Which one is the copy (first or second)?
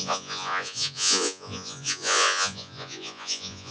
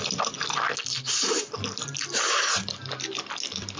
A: first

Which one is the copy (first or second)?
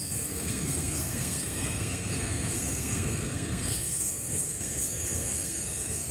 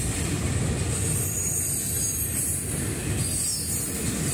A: first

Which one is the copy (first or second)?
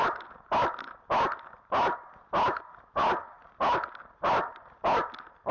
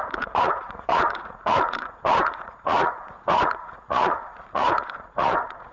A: second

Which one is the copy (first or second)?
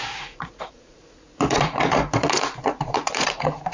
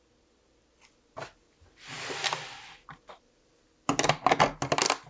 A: first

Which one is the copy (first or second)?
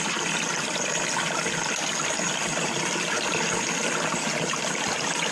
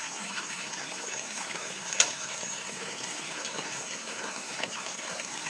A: second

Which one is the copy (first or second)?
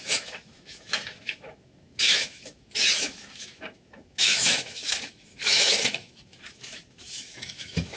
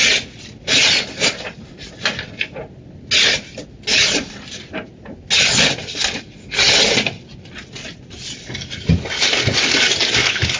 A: first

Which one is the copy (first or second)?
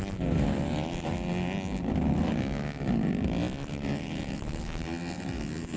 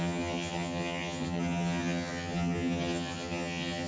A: second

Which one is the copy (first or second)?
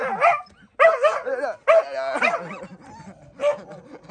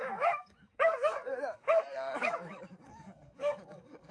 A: second